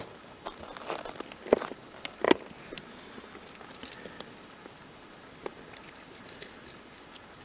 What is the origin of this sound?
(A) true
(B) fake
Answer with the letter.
A